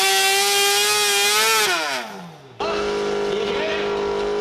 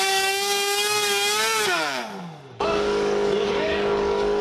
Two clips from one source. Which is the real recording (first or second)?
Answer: first